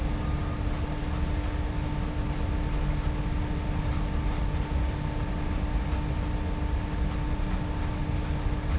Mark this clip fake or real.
real